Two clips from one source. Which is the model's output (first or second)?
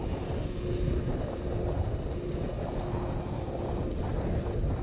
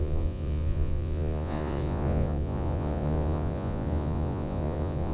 second